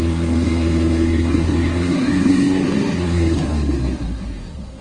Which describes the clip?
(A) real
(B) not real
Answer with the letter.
B